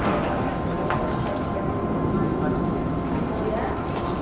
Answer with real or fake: real